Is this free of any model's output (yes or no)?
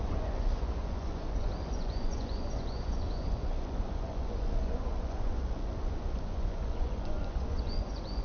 no